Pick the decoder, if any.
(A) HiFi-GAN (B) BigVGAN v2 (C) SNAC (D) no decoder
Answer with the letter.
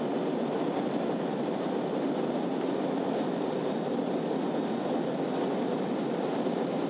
D